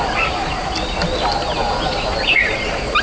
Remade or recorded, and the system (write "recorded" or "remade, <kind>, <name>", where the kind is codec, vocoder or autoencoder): recorded